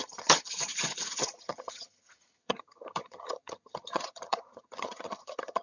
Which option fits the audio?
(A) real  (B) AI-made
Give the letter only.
B